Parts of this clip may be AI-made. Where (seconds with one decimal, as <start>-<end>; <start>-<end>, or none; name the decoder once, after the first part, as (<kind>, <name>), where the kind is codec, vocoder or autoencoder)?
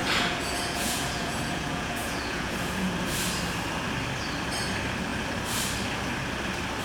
0.0-2.9 (vocoder, Vocos)